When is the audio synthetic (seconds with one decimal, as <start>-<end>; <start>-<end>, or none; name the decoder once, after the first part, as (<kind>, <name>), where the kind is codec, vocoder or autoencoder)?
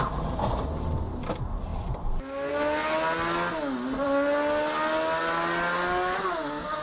none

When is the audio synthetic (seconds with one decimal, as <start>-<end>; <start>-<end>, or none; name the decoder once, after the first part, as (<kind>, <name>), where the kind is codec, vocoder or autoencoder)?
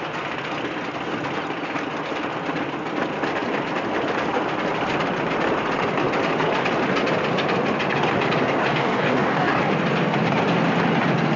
8.6-9.6 (codec, DAC)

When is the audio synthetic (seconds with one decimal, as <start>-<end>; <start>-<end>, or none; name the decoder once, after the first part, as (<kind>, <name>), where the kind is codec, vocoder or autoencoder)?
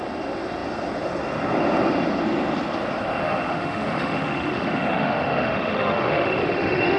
3.2-7.0 (autoencoder, DAC-VAE)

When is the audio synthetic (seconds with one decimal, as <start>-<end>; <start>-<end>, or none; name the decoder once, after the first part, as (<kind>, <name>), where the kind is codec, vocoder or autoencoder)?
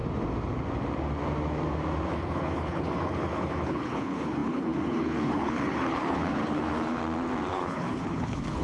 2.1-7.0 (codec, HILCodec); 7.5-8.6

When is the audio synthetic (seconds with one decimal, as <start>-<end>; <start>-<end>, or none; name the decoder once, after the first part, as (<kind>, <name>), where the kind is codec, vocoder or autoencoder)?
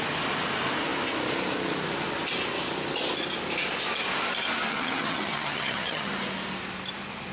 4.7-6.1 (vocoder, HiFi-GAN)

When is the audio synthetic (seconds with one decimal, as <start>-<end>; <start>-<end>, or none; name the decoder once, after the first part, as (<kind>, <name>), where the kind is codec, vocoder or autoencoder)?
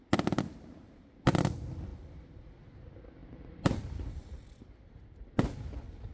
3.2-5.2 (vocoder, BigVGAN v2)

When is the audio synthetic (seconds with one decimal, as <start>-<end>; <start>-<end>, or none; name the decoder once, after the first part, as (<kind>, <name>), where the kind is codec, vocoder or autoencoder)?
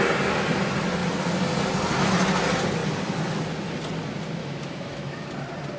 4.4-5.3 (autoencoder, DAC-VAE)